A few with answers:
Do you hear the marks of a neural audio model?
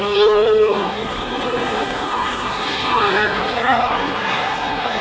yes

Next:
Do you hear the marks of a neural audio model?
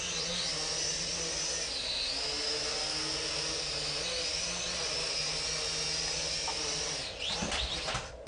no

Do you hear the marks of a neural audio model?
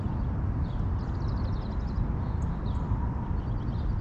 no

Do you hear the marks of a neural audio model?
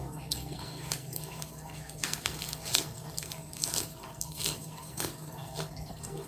yes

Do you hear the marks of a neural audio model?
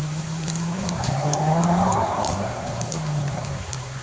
yes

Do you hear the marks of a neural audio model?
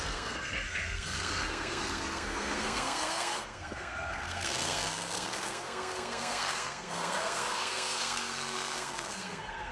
yes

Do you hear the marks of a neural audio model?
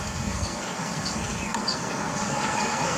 yes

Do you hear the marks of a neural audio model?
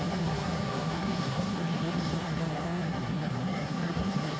yes